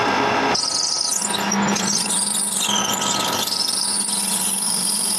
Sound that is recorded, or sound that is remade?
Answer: recorded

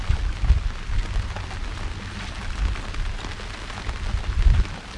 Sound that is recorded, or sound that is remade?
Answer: recorded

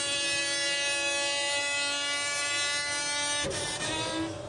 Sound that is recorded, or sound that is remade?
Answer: recorded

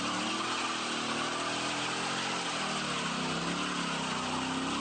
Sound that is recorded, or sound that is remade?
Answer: recorded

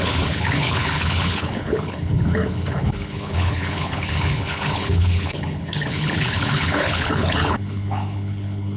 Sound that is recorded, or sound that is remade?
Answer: remade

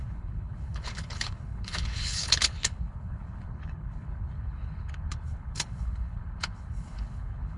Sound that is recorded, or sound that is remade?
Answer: remade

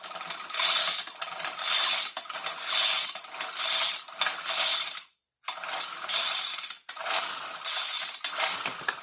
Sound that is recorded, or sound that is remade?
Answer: recorded